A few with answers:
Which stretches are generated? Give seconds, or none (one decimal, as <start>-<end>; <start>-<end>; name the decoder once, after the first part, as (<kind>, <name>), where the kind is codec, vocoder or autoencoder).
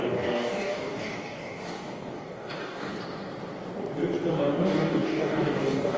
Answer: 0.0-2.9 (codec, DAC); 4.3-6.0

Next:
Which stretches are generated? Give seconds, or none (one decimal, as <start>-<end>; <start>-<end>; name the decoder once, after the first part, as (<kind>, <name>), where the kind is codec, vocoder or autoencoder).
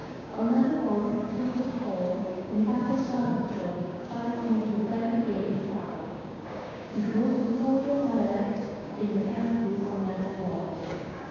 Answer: 0.0-11.3 (codec, DAC)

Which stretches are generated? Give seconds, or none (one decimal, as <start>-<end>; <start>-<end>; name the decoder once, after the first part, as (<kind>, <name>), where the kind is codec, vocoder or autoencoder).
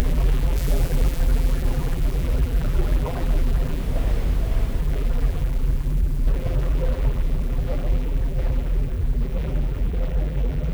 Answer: 0.0-3.8 (vocoder, BigVGAN v2); 4.8-10.7